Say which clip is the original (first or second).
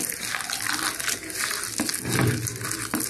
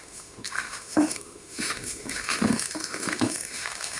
first